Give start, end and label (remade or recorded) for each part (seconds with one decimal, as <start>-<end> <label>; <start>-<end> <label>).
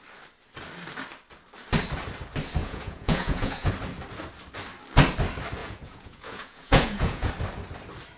0.0-2.6 recorded; 2.6-3.7 remade; 3.7-5.6 recorded; 5.6-7.3 remade; 7.3-8.2 recorded